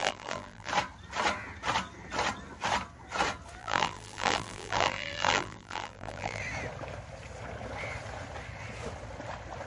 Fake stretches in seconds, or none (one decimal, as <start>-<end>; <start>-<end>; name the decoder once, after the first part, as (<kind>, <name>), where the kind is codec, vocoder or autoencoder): 0.0-0.7 (vocoder, BigVGAN v2); 3.6-6.4